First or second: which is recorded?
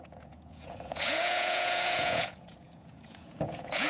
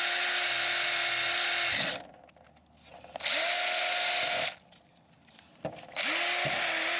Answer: second